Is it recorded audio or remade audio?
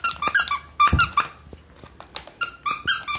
recorded